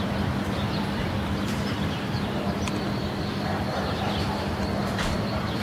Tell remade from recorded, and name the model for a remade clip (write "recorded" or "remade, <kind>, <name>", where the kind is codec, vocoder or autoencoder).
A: recorded